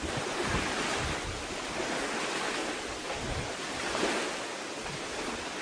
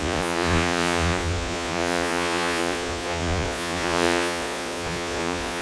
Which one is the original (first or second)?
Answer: first